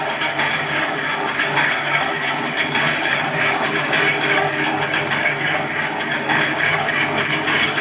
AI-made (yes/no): yes